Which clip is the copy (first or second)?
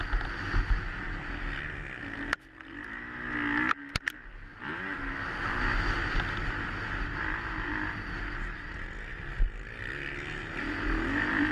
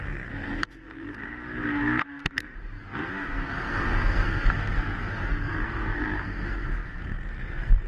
second